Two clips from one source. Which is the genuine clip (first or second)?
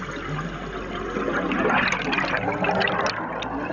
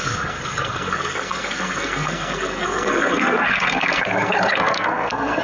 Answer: first